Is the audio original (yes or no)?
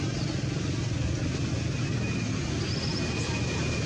yes